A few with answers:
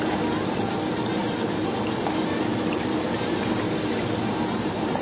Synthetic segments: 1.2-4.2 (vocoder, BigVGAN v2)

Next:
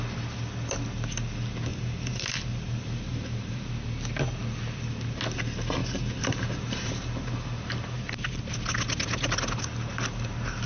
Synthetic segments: 1.7-3.7 (vocoder, BigVGAN v2); 5.8-8.4